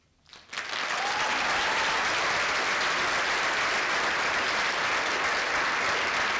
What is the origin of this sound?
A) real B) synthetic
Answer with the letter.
A